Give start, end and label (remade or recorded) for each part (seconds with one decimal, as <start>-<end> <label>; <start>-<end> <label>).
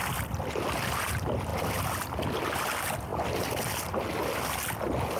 0.0-5.2 recorded